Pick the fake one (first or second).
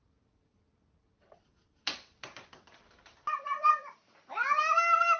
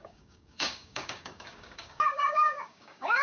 second